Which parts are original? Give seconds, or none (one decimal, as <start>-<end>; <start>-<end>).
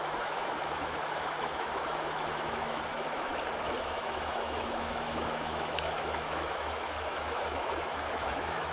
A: 3.3-3.8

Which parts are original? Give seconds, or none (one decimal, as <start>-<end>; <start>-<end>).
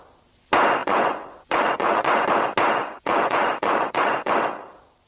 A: 0.0-0.8; 2.3-2.8; 4.3-5.1